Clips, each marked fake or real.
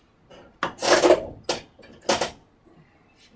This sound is real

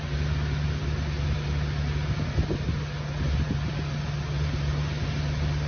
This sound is real